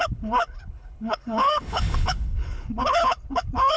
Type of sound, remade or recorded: remade